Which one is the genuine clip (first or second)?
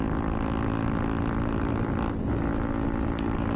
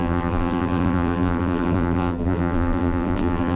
first